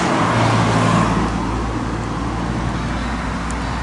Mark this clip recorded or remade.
recorded